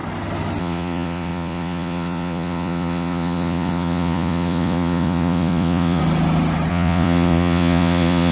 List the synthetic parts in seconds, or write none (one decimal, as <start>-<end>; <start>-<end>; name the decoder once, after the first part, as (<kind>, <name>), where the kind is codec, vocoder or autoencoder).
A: 0.6-6.0 (vocoder, Vocos); 6.7-8.3